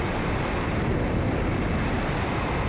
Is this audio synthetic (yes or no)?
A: no